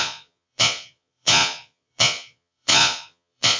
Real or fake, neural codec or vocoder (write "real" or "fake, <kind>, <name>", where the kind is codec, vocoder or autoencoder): fake, vocoder, Vocos